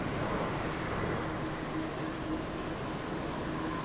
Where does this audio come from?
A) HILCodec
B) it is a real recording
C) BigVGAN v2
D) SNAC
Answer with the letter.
B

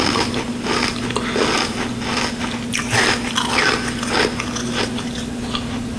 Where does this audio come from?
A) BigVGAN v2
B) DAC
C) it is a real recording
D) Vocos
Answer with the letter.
C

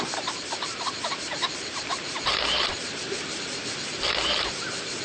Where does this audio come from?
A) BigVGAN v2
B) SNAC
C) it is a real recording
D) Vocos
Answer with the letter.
A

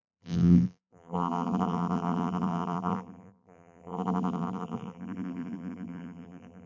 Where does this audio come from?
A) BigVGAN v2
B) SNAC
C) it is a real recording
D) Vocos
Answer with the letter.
A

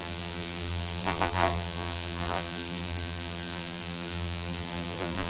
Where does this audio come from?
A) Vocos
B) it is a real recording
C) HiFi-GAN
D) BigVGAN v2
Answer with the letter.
D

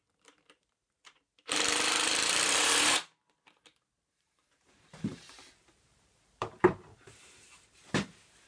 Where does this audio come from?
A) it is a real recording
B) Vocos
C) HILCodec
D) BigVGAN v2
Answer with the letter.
D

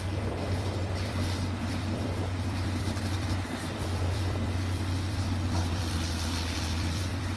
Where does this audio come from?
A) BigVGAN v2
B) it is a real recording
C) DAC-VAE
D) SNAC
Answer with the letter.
A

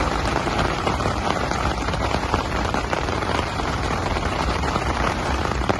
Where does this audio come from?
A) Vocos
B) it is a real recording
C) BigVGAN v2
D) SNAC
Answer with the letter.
C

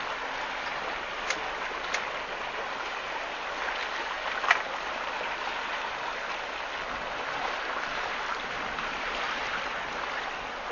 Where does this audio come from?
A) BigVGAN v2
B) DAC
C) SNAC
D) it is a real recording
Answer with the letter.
D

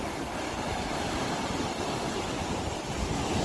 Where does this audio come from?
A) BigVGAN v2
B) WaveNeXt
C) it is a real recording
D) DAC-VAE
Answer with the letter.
C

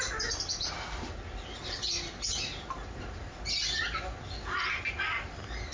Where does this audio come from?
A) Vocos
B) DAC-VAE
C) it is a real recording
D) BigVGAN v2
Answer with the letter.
C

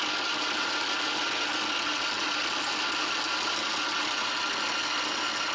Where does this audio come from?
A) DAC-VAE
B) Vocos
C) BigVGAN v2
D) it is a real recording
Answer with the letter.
D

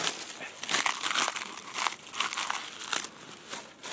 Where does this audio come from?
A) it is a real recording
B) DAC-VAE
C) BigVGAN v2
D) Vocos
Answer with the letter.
A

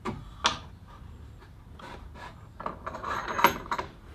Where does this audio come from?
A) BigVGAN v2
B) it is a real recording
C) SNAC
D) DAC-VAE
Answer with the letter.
B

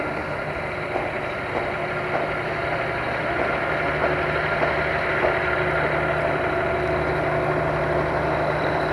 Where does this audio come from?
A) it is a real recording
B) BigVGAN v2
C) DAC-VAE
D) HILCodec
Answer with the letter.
A